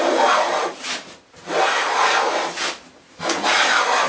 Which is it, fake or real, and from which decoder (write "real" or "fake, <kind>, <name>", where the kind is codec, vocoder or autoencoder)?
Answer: real